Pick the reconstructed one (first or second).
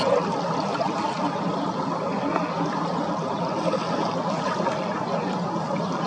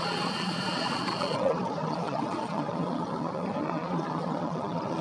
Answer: second